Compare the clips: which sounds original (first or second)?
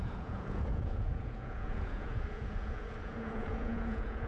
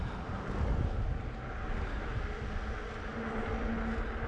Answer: second